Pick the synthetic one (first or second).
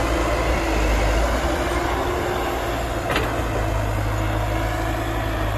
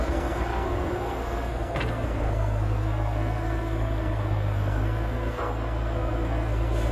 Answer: second